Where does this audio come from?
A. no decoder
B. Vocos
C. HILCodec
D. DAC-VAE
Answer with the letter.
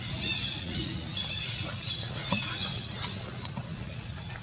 B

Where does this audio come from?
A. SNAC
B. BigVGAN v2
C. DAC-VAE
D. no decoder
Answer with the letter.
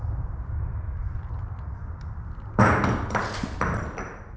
D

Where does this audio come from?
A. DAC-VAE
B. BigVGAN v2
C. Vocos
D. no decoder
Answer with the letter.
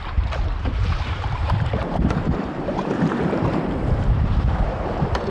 B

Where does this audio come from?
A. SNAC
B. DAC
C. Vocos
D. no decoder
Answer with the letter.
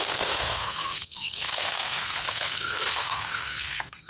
A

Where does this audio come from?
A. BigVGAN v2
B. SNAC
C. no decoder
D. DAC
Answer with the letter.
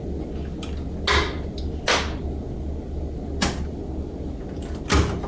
C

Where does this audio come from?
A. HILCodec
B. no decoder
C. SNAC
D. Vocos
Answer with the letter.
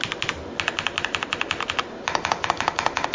B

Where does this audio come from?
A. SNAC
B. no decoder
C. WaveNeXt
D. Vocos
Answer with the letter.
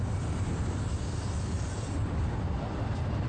B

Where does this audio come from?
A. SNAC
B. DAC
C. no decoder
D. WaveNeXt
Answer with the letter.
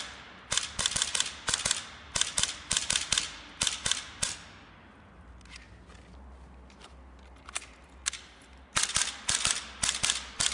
C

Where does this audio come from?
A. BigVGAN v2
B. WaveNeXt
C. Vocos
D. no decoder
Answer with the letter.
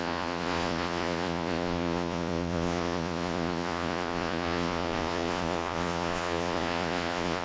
C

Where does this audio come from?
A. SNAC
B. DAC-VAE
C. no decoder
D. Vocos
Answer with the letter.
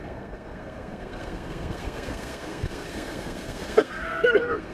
A